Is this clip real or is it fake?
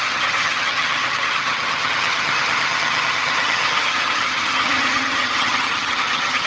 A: fake